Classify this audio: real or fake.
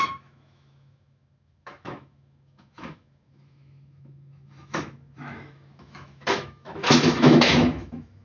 fake